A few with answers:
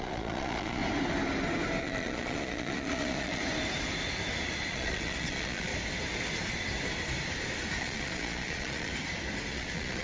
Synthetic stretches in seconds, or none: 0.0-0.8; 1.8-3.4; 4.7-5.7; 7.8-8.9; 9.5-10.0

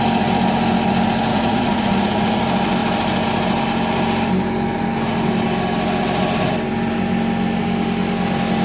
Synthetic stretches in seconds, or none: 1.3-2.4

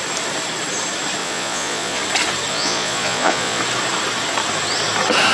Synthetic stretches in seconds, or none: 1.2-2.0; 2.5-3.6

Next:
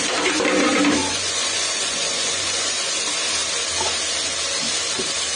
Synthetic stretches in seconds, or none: 1.0-2.9

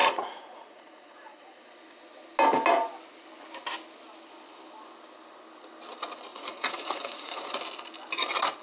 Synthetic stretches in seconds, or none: 0.0-1.6; 6.3-7.6

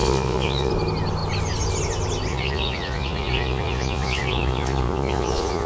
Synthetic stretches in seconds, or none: 0.0-0.7; 2.3-5.7

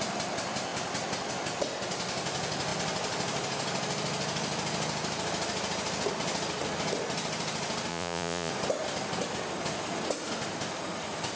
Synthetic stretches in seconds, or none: 7.9-8.5

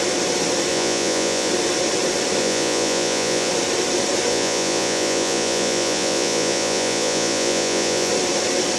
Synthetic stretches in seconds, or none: 0.7-1.5; 2.4-3.5; 4.3-8.1